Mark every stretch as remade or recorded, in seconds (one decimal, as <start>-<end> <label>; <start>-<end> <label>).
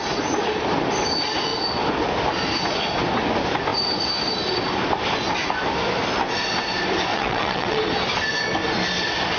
0.0-7.1 recorded; 7.1-7.8 remade; 7.8-9.4 recorded